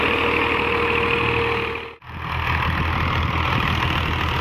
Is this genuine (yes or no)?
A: yes